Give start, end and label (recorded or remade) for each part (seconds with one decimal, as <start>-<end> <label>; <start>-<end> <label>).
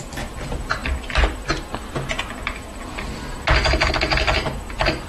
0.0-5.1 recorded